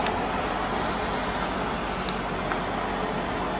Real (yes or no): yes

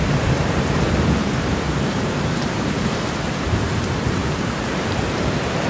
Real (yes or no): no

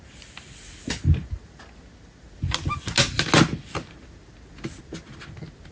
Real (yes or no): yes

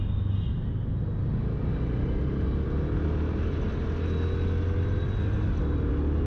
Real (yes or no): yes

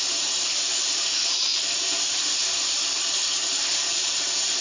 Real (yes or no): no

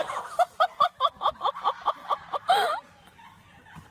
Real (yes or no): no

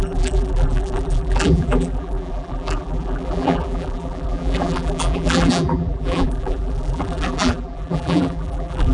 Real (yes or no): no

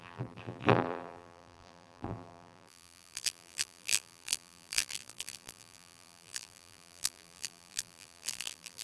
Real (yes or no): no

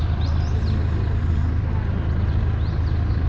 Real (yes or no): yes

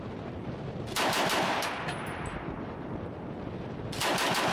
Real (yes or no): no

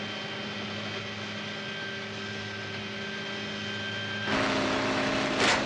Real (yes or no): yes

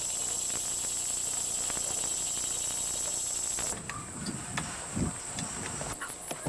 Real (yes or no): yes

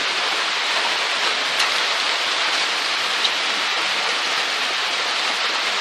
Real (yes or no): yes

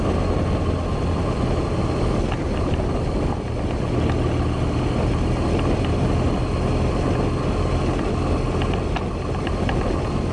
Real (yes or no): yes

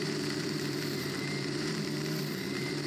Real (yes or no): no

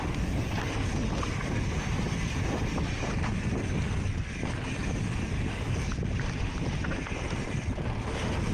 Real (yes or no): yes